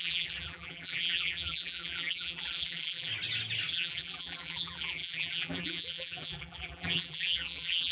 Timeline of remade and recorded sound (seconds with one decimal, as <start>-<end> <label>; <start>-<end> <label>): 0.0-3.1 remade; 3.1-3.7 recorded; 3.7-7.9 remade